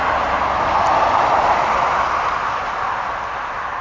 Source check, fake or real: real